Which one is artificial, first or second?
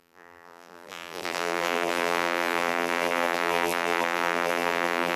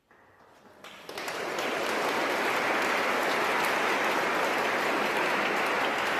first